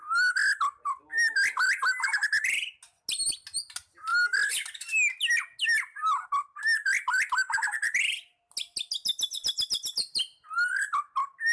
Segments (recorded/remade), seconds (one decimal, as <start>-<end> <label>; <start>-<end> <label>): 0.0-11.5 recorded